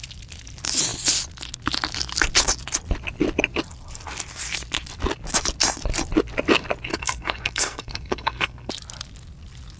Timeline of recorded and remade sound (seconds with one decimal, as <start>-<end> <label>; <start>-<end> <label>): 0.0-6.9 recorded; 6.9-8.7 remade; 8.7-9.8 recorded